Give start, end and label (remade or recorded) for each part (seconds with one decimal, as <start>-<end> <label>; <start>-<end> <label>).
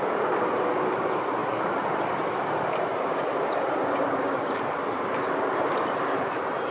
0.0-6.7 recorded